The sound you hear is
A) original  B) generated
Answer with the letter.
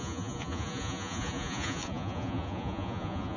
B